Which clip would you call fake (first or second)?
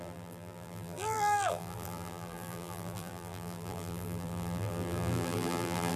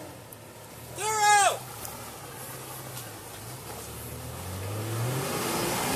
first